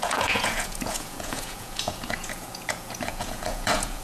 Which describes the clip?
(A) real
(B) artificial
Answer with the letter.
B